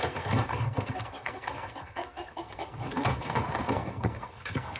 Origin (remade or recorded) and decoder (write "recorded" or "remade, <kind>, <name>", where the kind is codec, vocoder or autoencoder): remade, codec, SNAC